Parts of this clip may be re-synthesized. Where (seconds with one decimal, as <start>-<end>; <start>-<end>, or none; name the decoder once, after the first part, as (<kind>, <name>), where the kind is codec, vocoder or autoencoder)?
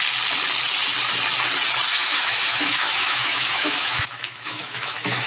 1.9-5.3 (autoencoder, DAC-VAE)